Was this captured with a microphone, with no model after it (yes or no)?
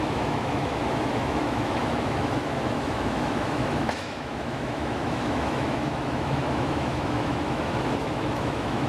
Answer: no